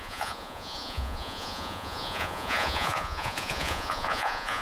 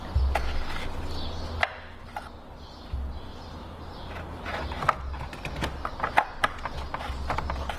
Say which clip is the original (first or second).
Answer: second